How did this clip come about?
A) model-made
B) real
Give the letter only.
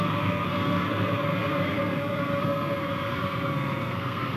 A